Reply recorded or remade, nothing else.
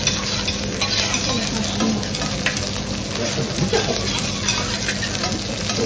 recorded